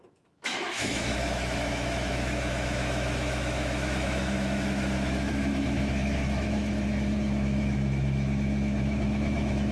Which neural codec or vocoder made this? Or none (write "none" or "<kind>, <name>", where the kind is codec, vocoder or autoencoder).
autoencoder, DAC-VAE